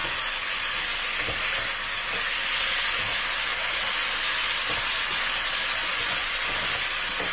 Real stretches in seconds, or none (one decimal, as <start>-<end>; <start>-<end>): 0.8-5.8; 6.5-7.3